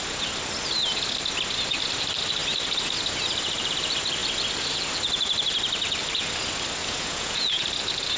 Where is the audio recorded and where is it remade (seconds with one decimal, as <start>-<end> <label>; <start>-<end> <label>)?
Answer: 0.0-6.8 recorded; 6.8-7.6 remade; 7.6-8.2 recorded